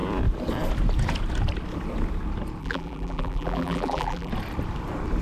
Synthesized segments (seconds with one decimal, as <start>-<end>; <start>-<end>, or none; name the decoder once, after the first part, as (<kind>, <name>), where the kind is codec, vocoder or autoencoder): 2.6-4.3 (vocoder, BigVGAN v2)